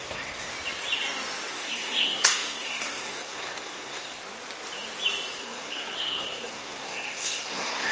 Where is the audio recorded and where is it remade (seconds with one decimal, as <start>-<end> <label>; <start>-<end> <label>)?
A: 0.0-0.5 remade; 0.5-1.5 recorded; 1.5-4.2 remade; 4.2-5.4 recorded; 5.4-7.9 remade